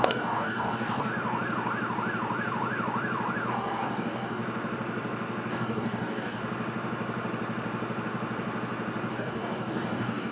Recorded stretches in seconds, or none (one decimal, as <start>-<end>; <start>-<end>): 1.1-3.5; 4.4-5.5; 6.4-9.1